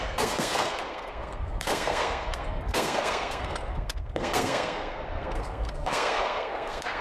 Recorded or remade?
remade